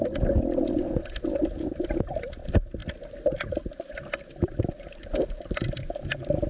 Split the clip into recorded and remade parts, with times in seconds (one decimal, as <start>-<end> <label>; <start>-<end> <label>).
0.0-6.5 recorded